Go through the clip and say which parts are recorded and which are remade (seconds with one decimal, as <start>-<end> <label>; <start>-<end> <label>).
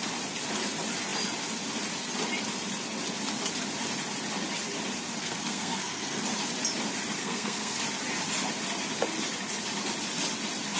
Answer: 0.0-5.2 recorded; 5.2-6.2 remade; 6.2-7.2 recorded; 7.2-7.8 remade; 7.8-10.8 recorded